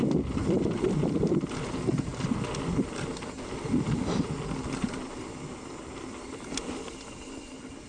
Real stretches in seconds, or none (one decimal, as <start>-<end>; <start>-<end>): 0.0-7.9